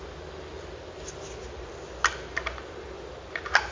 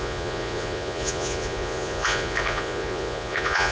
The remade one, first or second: second